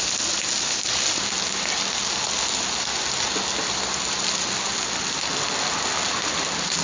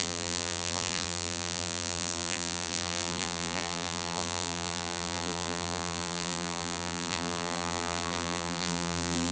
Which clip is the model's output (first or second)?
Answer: second